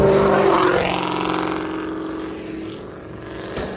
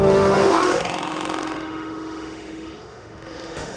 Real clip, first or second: first